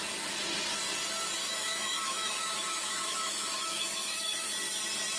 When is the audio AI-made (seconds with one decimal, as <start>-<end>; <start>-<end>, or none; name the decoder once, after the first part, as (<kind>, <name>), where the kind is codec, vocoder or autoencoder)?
1.4-4.5 (autoencoder, DAC-VAE)